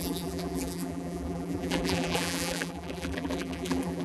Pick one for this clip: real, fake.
fake